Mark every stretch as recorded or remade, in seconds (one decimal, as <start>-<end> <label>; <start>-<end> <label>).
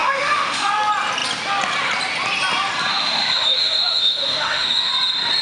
0.0-0.7 remade; 0.7-2.9 recorded; 2.9-4.9 remade; 4.9-5.4 recorded